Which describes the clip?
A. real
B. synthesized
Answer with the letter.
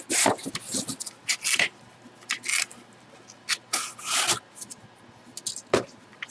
A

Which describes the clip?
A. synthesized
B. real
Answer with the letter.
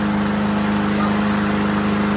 B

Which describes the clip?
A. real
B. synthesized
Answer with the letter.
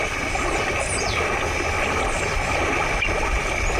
A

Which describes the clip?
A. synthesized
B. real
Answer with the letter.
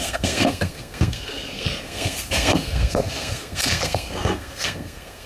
A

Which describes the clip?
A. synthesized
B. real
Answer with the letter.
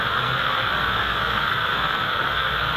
A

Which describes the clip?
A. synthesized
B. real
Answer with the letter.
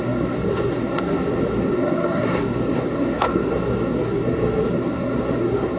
A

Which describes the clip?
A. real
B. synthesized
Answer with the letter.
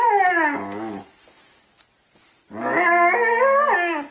A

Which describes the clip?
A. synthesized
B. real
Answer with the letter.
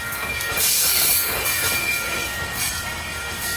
A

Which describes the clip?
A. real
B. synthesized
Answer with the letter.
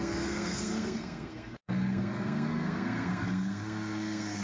B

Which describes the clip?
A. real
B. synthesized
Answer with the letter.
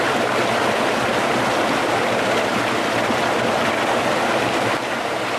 A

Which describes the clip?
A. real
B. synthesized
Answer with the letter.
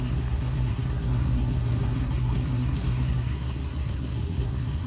B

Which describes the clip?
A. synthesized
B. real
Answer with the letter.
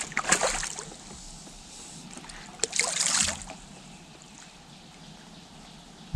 B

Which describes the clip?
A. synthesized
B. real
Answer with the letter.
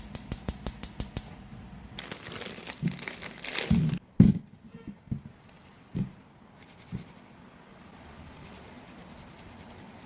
B